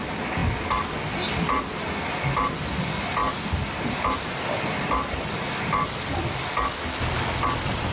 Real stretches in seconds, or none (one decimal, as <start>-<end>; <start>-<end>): 0.0-7.9